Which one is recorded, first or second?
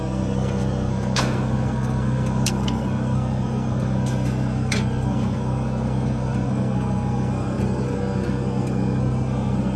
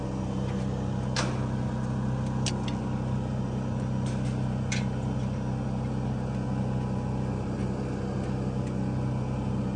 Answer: second